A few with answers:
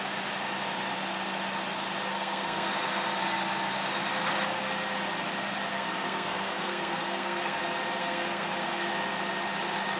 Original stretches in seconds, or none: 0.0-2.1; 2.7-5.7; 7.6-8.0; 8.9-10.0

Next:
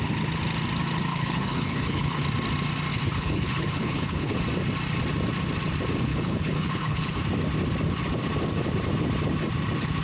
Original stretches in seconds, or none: 0.0-1.1; 2.2-2.9; 4.4-6.1; 7.2-10.0